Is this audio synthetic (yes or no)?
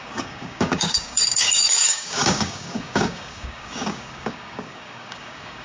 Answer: yes